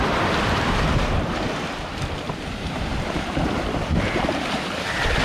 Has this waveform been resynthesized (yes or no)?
yes